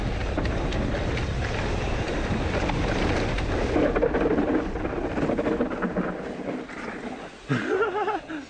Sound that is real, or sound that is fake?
real